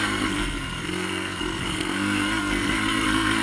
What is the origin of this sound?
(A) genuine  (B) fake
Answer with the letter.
B